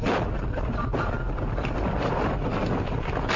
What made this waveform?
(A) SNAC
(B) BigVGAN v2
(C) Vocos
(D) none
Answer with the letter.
D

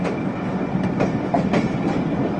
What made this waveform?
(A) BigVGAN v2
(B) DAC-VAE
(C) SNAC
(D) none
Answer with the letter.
D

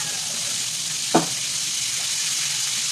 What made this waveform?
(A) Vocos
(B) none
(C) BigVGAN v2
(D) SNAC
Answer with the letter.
B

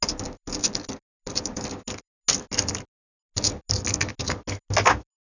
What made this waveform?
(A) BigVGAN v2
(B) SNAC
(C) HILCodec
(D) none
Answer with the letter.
D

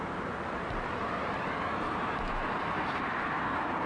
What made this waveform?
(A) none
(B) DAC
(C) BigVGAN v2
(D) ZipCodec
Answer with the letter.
C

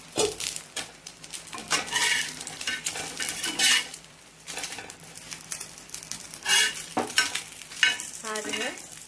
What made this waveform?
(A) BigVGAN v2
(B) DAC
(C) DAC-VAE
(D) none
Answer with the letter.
A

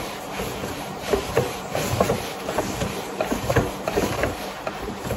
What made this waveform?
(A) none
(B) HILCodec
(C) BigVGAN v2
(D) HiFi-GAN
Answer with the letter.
C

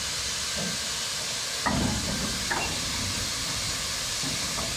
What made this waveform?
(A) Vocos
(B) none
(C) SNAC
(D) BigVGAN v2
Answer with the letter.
B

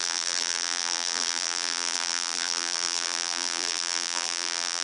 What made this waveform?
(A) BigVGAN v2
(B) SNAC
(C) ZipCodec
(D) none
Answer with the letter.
A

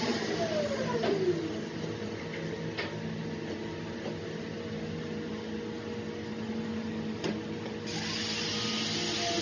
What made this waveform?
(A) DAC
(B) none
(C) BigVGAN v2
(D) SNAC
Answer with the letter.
B